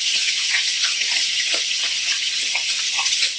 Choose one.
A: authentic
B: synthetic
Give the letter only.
B